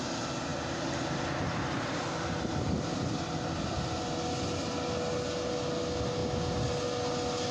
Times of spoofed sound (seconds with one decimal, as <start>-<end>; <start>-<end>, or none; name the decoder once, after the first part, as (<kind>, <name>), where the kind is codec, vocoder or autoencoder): none